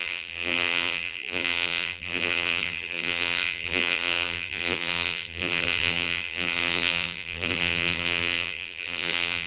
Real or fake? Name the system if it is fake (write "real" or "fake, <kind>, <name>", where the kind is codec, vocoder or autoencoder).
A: fake, vocoder, BigVGAN v2